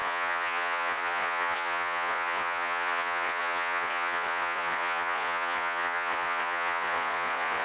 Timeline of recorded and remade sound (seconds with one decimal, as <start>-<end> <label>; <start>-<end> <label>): 0.0-7.6 remade